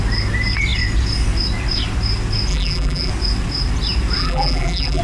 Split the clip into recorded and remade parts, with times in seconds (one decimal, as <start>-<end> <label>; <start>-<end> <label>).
0.0-2.5 recorded; 2.5-3.1 remade; 3.1-4.2 recorded; 4.2-5.0 remade